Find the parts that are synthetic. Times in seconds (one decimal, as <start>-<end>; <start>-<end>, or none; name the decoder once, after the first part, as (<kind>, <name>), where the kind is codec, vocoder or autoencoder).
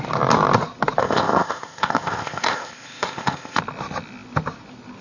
1.0-3.6 (codec, ZipCodec)